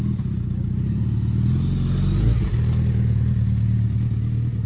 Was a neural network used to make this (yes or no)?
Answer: no